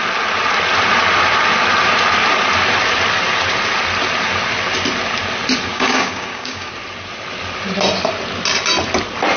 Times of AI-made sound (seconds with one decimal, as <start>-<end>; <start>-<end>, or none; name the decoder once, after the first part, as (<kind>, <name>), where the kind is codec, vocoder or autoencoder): 5.7-6.7 (codec, DAC)